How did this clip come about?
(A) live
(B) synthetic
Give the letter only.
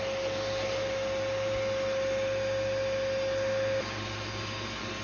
A